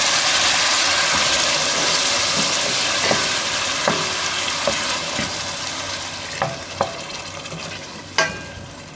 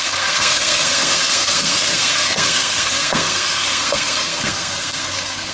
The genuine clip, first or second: first